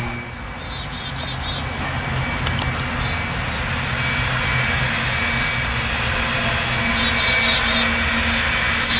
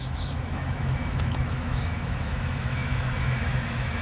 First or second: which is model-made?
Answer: second